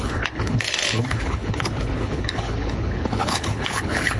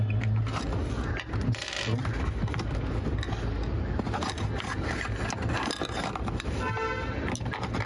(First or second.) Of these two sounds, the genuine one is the second